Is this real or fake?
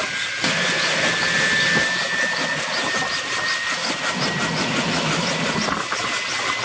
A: real